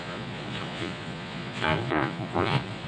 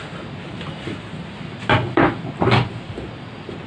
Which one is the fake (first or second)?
first